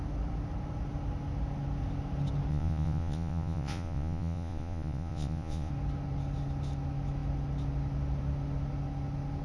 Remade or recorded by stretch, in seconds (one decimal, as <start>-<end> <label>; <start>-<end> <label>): 0.0-2.5 recorded; 2.5-5.7 remade; 5.7-9.4 recorded

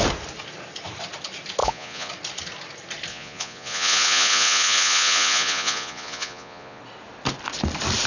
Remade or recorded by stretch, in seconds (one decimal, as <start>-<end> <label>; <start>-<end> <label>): 0.0-1.6 recorded; 1.6-2.1 remade; 2.1-3.1 recorded; 3.1-6.8 remade; 6.8-8.1 recorded

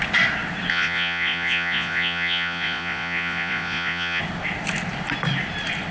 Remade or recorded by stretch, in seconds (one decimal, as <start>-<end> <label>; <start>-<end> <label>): 0.0-0.7 recorded; 0.7-4.2 remade; 4.2-5.9 recorded

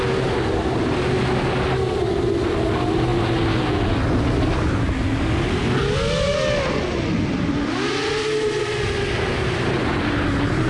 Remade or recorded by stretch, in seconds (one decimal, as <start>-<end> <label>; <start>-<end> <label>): 0.0-10.7 recorded

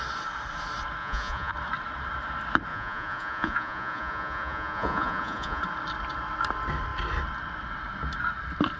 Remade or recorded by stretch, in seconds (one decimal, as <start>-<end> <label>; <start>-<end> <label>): 0.0-1.0 recorded; 1.0-1.5 remade; 1.5-2.7 recorded; 2.7-5.6 remade; 5.6-8.8 recorded

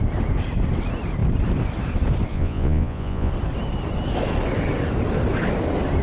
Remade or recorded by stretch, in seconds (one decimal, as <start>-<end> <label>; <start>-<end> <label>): 0.0-2.3 recorded; 2.3-3.3 remade; 3.3-6.0 recorded